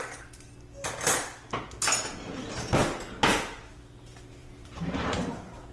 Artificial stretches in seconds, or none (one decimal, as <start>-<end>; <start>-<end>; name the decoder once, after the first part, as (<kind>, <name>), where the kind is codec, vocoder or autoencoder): 0.0-0.5 (vocoder, BigVGAN v2); 2.1-2.8; 3.7-5.7